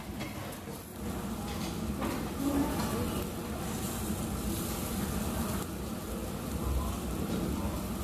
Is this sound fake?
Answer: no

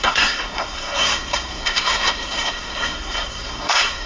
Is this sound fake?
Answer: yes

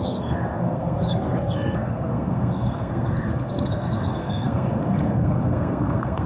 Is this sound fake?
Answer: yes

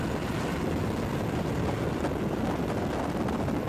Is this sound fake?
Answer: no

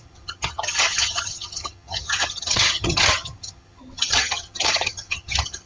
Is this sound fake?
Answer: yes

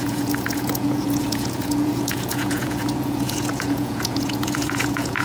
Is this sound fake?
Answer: yes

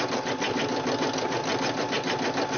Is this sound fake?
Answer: no